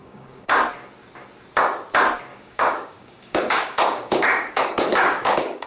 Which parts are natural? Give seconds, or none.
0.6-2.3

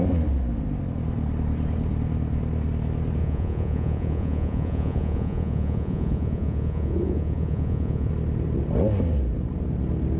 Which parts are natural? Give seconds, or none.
0.0-3.2; 8.1-10.2

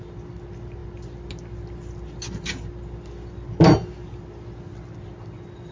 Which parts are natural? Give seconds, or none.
0.0-5.7

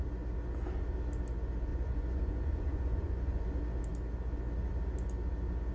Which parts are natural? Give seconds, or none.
0.0-1.7; 3.5-5.7

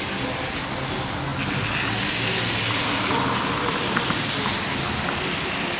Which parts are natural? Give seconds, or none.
0.0-5.8

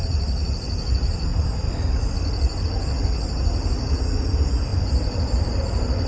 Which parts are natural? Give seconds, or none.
0.0-1.3; 2.7-4.7; 5.6-6.1